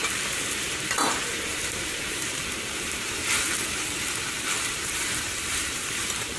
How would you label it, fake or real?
fake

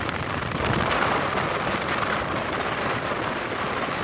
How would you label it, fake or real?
real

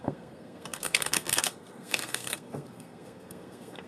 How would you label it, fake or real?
fake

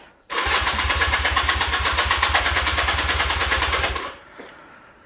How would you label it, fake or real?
fake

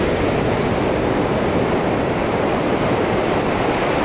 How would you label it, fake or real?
real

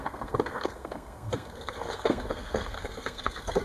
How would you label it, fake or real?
fake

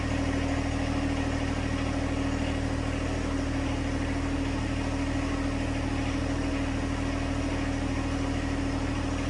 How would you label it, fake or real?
real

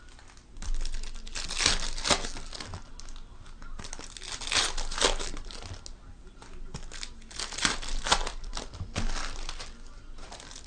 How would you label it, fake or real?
real